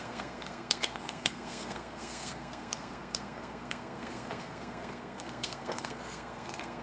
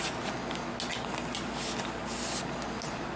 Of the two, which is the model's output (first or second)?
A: first